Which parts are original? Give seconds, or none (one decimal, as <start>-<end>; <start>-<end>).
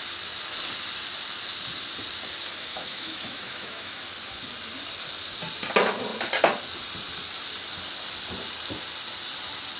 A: 0.0-2.7; 4.0-9.8